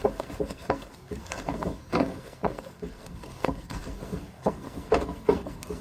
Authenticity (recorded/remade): remade